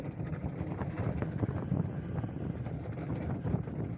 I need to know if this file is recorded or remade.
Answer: recorded